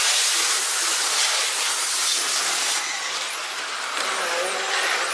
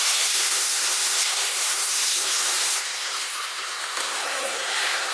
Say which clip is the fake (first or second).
second